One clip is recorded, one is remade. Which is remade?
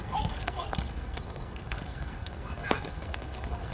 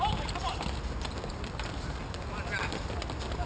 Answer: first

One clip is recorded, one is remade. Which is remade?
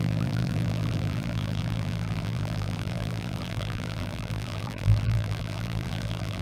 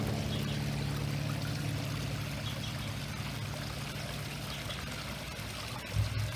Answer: first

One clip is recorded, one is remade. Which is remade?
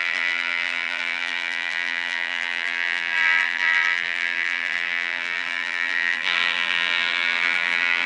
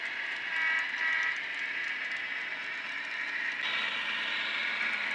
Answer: first